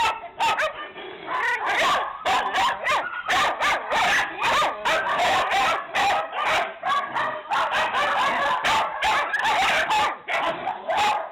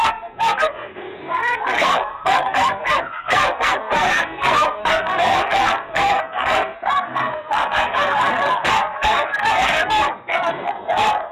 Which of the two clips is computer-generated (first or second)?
second